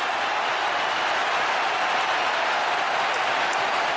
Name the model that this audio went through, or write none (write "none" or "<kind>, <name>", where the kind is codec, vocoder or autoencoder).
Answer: none